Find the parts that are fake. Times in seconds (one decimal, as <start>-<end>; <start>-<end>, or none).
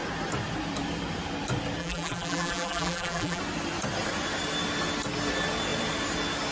1.8-3.4